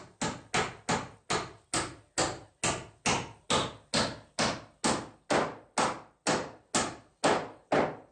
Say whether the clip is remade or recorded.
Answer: recorded